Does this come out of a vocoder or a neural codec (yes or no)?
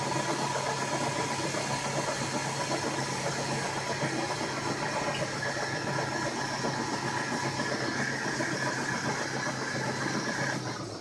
no